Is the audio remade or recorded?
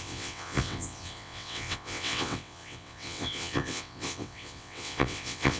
remade